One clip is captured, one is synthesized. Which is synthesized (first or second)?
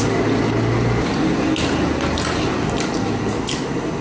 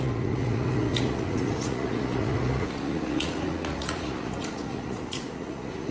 second